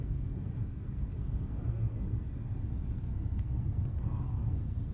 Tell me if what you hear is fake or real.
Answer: fake